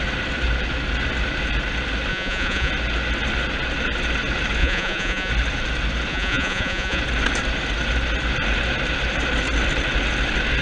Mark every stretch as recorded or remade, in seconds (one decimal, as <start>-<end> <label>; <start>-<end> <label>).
0.0-2.1 recorded; 2.1-2.7 remade; 2.7-4.6 recorded; 4.6-5.3 remade; 5.3-6.1 recorded; 6.1-7.0 remade; 7.0-10.6 recorded